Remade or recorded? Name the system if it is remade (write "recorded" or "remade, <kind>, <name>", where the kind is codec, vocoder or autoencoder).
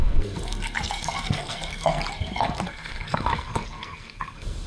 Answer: remade, codec, SNAC